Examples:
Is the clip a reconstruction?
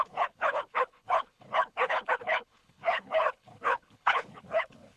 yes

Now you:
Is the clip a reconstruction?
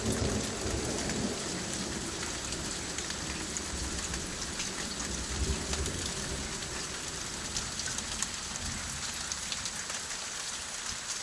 no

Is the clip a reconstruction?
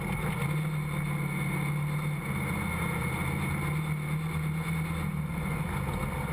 no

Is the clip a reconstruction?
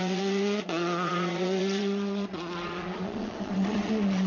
yes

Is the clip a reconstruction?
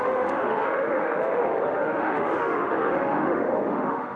yes